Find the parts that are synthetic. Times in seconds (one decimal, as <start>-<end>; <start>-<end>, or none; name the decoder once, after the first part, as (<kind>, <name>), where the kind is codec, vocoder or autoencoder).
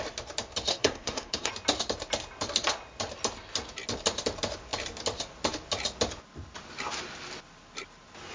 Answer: 0.7-1.5 (codec, SNAC)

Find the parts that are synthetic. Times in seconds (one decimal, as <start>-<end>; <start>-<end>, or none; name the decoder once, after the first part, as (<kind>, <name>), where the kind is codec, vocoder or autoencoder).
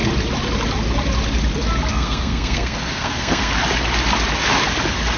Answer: 1.9-3.5 (codec, SNAC)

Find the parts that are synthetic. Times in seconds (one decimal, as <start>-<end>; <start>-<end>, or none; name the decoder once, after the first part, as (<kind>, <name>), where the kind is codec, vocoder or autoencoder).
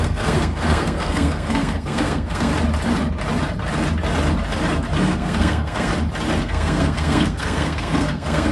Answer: 0.0-2.5 (codec, SNAC); 5.0-5.9; 6.4-8.5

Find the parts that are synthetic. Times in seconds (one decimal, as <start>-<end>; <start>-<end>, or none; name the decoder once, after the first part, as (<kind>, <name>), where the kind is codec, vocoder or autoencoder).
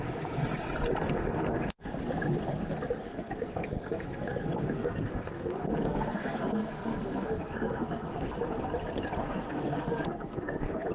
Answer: 1.0-1.9 (codec, SNAC); 3.0-8.3; 9.2-10.9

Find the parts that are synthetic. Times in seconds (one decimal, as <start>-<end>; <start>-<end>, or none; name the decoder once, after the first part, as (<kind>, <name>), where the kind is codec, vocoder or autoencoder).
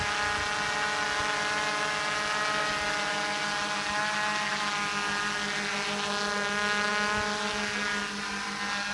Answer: none